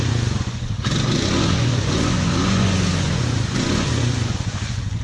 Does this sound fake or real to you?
fake